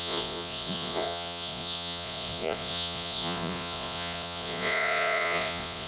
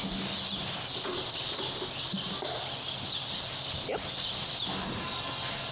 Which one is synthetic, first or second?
first